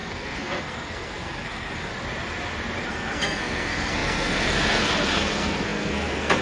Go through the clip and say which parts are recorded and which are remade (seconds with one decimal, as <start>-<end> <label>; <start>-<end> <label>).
0.0-1.9 remade; 1.9-2.9 recorded; 2.9-6.4 remade